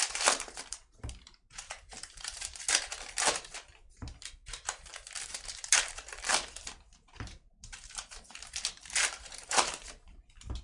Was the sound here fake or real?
fake